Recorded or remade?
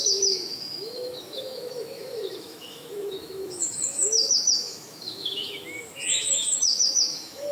remade